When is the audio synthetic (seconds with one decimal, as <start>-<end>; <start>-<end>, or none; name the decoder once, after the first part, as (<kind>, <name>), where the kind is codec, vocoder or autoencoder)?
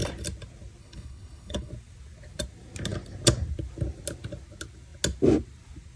0.8-1.7 (codec, HILCodec)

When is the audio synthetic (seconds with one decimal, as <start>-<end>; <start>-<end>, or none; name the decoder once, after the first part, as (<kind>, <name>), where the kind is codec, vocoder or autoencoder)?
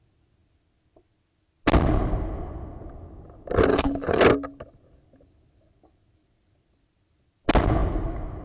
3.7-4.2 (codec, HILCodec)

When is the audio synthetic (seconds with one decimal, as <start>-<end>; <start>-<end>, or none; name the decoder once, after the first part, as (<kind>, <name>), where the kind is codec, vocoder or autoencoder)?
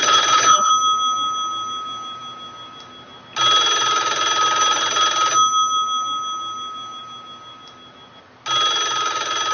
0.0-0.7 (codec, HILCodec)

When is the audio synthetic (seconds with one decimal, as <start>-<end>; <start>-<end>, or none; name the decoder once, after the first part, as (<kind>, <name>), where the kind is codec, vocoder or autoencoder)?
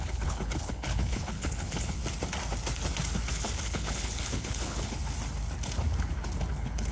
0.0-2.0 (codec, HILCodec); 3.3-5.0; 6.5-6.9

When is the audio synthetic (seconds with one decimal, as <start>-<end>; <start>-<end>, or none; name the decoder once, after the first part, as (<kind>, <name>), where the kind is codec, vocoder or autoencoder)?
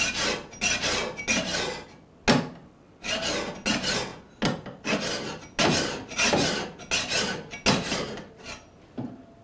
none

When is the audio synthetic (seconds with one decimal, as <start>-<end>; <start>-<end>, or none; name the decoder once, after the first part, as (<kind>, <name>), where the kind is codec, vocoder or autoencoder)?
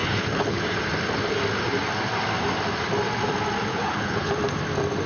0.0-0.6 (codec, HILCodec); 3.7-4.3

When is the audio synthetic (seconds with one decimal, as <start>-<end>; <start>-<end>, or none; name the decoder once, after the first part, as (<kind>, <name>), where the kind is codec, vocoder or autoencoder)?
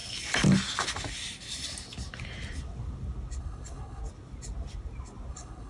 3.4-4.0 (codec, HILCodec); 5.3-5.7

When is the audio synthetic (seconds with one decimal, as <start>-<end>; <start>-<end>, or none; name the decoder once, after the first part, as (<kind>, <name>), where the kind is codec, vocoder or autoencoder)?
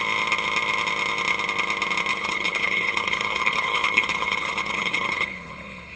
2.1-6.0 (codec, HILCodec)